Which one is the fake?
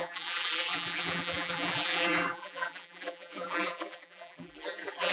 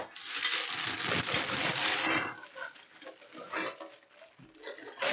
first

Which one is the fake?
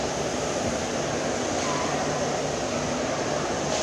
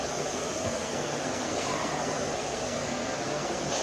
second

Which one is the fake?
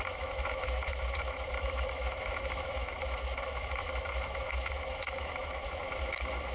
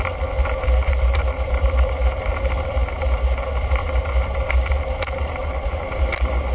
first